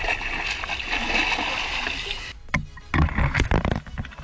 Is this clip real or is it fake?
real